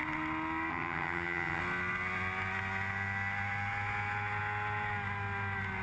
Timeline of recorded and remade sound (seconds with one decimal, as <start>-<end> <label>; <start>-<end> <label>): 0.0-0.7 recorded; 0.7-1.6 remade; 1.6-5.8 recorded